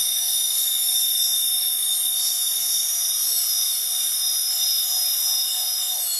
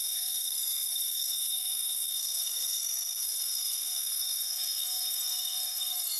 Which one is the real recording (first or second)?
first